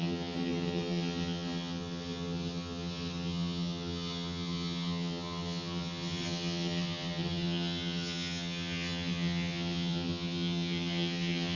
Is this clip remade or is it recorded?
remade